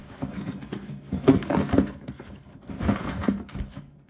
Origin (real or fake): fake